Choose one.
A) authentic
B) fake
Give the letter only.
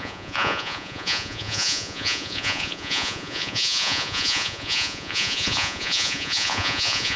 B